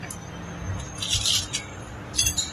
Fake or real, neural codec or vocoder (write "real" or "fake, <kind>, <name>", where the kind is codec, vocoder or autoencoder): fake, vocoder, BigVGAN v2